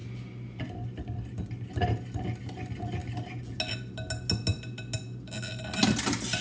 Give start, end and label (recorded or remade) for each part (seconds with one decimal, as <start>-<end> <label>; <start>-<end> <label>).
0.0-6.4 recorded